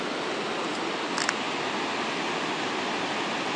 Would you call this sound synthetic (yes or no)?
no